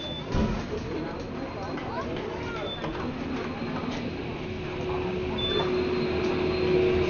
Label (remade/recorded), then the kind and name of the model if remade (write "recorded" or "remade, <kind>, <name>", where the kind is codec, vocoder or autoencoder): recorded